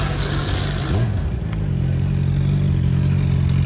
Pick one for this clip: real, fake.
real